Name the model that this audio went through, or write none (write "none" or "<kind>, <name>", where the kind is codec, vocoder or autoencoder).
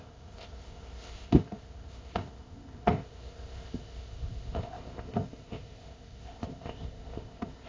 codec, ZipCodec